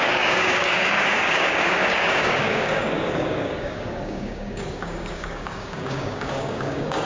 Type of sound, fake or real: fake